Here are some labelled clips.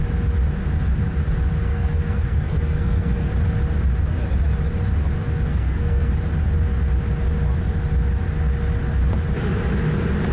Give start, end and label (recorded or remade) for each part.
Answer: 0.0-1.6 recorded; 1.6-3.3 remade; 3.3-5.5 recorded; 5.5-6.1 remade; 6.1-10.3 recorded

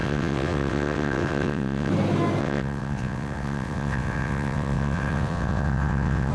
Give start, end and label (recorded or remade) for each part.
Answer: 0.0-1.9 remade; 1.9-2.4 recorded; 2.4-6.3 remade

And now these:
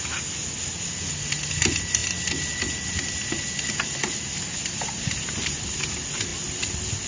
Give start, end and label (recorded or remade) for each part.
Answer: 0.0-7.1 recorded

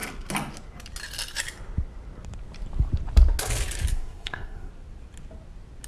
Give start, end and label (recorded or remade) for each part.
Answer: 0.0-3.9 recorded; 3.9-4.7 remade; 4.7-5.9 recorded